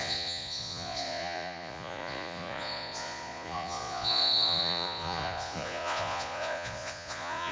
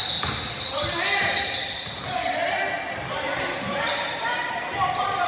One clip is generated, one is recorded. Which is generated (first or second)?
first